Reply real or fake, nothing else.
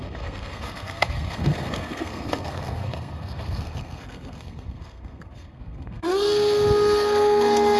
fake